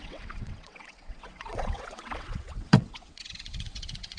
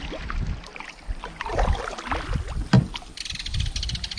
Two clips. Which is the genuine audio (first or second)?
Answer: second